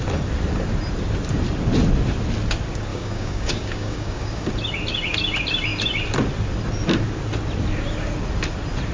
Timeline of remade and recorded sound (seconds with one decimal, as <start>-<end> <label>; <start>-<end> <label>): 0.0-2.9 recorded; 2.9-4.5 remade; 4.5-8.9 recorded